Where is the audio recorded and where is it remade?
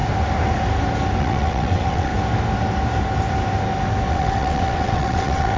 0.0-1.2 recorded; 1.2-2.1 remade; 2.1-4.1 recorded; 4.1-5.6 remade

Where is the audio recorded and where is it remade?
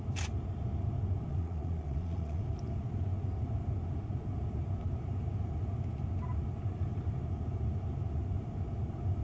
0.0-1.3 recorded; 1.3-2.4 remade; 2.4-9.2 recorded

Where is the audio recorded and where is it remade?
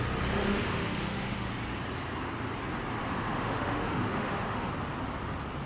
0.0-0.5 recorded; 0.5-1.5 remade; 1.5-3.0 recorded; 3.0-4.7 remade; 4.7-5.7 recorded